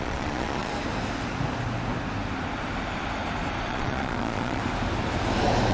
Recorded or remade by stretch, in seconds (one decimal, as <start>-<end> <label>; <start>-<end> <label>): 0.0-0.7 remade; 0.7-3.7 recorded; 3.7-4.6 remade; 4.6-5.7 recorded